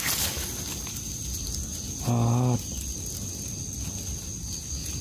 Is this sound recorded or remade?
recorded